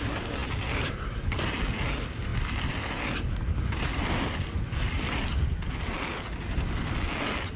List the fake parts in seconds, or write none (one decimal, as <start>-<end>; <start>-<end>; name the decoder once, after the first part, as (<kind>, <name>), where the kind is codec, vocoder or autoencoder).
none